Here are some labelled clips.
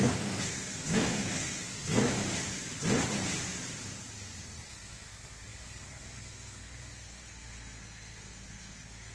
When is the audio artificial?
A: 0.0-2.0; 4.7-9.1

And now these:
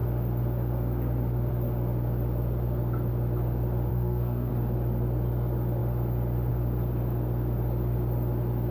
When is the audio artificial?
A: 3.9-4.5

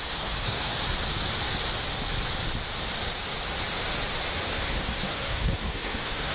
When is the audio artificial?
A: 0.0-0.7; 4.5-6.3